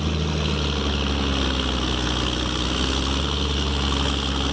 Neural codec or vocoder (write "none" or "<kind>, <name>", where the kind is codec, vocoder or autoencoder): none